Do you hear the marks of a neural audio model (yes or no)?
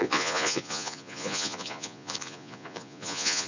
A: yes